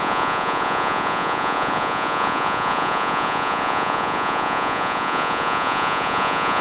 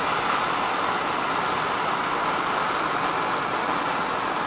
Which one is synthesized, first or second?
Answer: first